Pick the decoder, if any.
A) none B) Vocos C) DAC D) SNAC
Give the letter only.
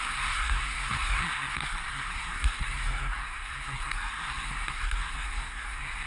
D